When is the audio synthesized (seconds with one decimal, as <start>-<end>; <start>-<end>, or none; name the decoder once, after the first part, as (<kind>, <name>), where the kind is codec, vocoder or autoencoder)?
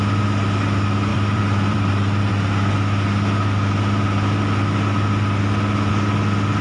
1.1-1.9 (vocoder, BigVGAN v2)